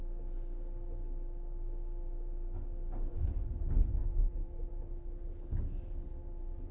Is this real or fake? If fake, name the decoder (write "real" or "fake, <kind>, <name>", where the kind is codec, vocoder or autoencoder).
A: real